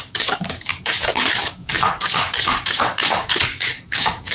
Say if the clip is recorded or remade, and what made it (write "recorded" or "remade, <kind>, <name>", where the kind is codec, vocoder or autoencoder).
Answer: remade, codec, DAC